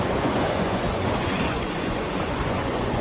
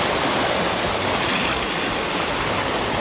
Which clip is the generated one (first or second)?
first